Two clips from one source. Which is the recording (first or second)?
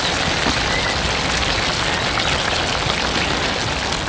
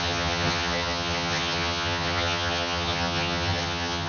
first